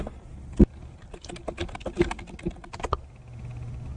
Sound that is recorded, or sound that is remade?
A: recorded